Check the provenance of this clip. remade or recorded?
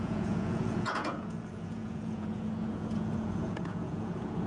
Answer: remade